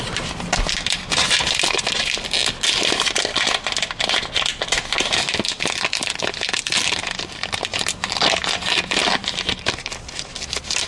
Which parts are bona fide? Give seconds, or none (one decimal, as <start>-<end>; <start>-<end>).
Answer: 0.0-10.9